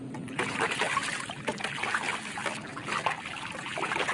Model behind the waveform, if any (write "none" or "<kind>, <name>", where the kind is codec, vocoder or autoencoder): none